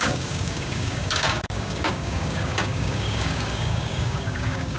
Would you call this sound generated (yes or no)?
yes